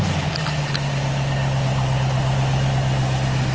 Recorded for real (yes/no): yes